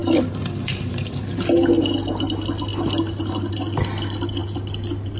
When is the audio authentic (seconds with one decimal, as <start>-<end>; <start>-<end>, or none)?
1.2-5.2